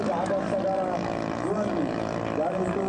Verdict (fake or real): real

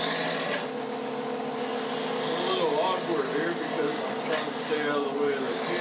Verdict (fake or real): real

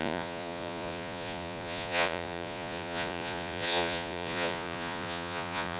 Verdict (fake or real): fake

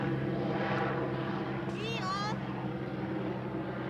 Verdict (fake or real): real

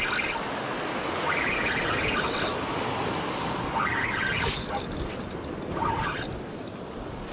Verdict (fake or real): real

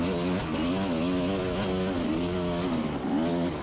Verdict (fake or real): real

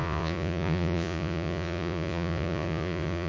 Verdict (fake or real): fake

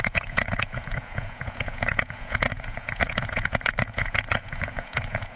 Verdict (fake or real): fake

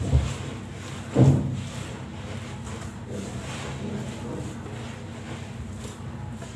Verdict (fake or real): real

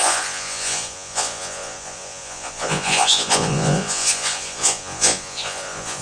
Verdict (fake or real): fake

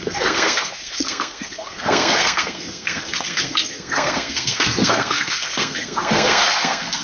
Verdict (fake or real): fake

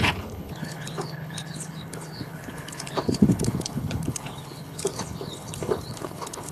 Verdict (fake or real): fake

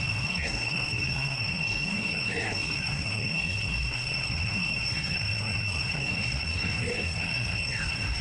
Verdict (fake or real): fake